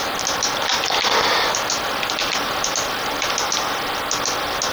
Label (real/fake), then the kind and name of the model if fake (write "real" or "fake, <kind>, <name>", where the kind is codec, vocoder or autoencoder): real